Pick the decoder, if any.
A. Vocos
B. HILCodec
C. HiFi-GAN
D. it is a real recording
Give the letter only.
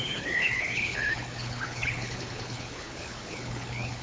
B